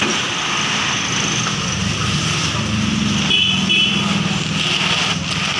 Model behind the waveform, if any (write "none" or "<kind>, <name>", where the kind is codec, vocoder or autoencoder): none